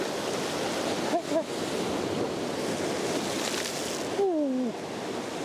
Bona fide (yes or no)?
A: yes